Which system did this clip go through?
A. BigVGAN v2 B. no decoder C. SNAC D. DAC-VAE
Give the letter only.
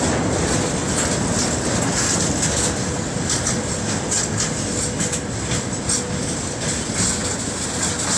B